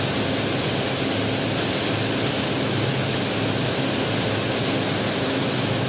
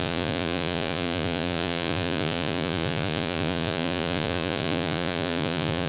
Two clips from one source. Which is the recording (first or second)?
first